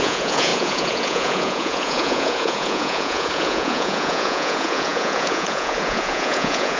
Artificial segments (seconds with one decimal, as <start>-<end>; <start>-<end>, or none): 0.0-6.8